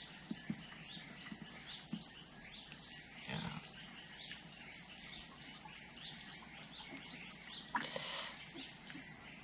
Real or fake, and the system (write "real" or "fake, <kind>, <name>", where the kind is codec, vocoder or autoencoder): real